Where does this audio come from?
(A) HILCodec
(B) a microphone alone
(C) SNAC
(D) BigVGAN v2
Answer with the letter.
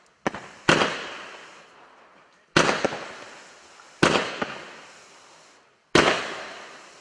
B